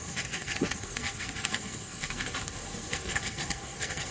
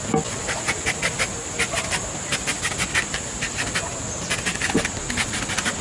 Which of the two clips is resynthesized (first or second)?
first